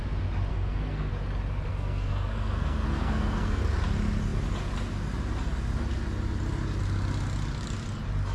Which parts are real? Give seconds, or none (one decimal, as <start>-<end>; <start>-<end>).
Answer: 0.0-0.5; 1.1-1.7; 3.6-8.3